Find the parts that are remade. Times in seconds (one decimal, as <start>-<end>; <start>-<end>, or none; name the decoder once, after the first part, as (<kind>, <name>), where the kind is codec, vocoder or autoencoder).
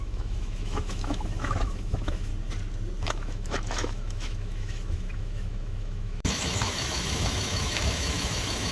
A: 0.0-2.3 (autoencoder, DAC-VAE); 3.0-8.7